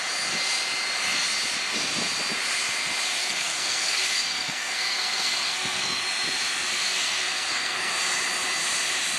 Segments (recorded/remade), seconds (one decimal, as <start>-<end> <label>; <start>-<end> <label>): 0.0-3.2 recorded; 3.2-6.0 remade; 6.0-6.7 recorded; 6.7-7.9 remade; 7.9-9.2 recorded